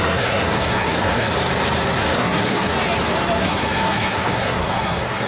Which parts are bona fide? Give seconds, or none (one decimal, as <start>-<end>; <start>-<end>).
1.3-2.0; 2.7-3.4